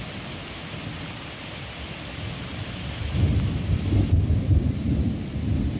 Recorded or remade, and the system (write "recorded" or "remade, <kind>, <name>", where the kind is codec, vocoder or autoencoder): recorded